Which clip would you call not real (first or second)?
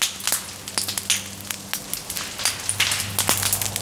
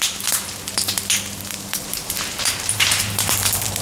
second